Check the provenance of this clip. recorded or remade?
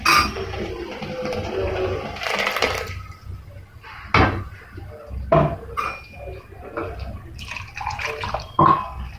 recorded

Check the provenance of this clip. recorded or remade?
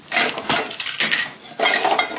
recorded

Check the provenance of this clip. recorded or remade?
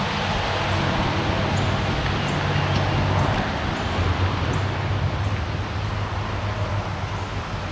recorded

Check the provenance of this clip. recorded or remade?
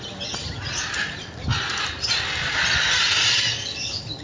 recorded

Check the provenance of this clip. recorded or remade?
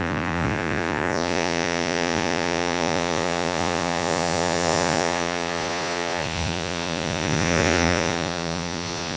remade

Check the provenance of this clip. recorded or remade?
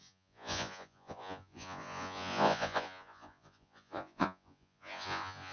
remade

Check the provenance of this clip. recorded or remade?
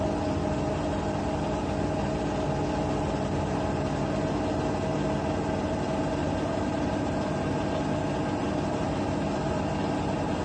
recorded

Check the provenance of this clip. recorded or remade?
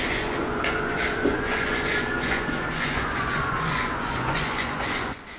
remade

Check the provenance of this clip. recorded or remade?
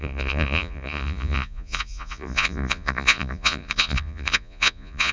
remade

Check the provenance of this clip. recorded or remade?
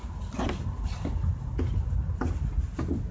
recorded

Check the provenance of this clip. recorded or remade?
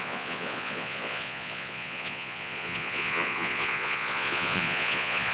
remade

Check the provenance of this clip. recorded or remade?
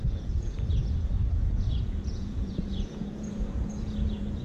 remade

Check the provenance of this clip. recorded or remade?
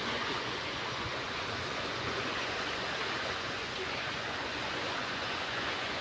remade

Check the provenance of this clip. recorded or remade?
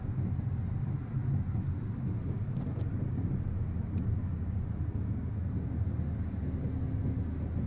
recorded